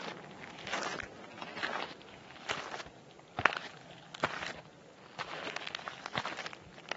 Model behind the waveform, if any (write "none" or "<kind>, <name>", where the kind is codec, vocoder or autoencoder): none